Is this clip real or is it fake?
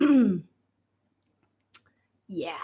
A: real